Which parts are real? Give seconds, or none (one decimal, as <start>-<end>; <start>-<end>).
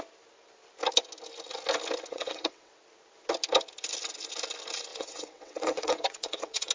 0.0-2.1; 2.7-4.9